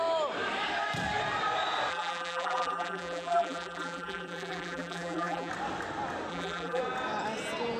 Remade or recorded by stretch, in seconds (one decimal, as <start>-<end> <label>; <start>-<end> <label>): 0.0-1.9 recorded; 1.9-5.5 remade; 5.5-6.3 recorded; 6.3-6.8 remade; 6.8-7.8 recorded